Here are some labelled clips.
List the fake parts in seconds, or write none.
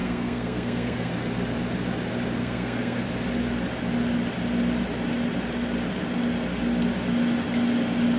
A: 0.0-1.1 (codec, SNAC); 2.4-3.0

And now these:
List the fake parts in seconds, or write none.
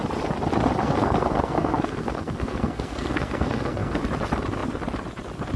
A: 0.8-4.0 (codec, SNAC)